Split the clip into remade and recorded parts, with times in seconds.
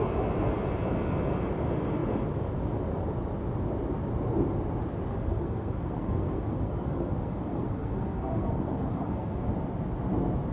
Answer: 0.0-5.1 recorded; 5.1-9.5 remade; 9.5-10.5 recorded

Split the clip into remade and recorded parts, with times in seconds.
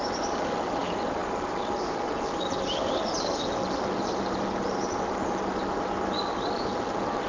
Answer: 0.0-7.3 recorded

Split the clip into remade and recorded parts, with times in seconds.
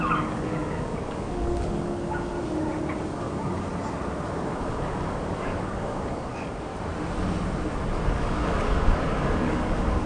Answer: 0.0-2.3 remade; 2.3-2.8 recorded; 2.8-3.7 remade; 3.7-4.3 recorded; 4.3-6.7 remade; 6.7-8.1 recorded; 8.1-10.1 remade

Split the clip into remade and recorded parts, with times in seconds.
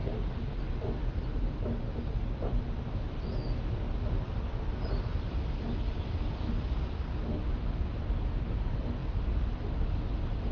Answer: 0.0-0.6 remade; 0.6-10.5 recorded